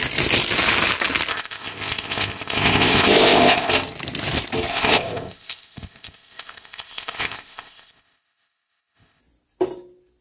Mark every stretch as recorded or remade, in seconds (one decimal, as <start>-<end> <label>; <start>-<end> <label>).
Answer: 0.0-1.3 recorded; 1.3-3.7 remade; 3.7-4.7 recorded; 4.7-9.2 remade; 9.2-10.2 recorded